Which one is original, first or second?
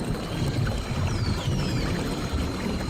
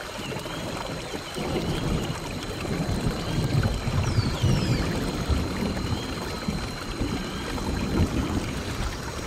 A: first